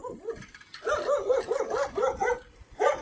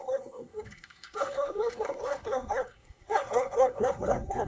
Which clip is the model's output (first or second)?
second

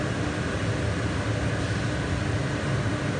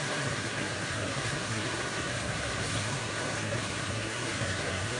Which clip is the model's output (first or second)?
second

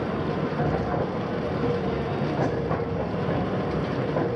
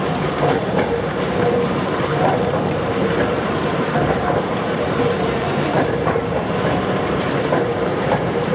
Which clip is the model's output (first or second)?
second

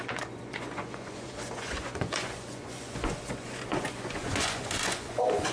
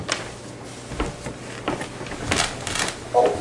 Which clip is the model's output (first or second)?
first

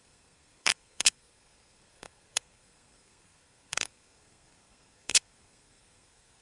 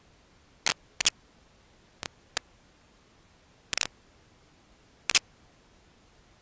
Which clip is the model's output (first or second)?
first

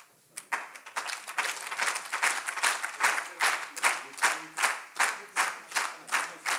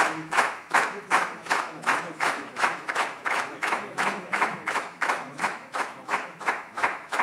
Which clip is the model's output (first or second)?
second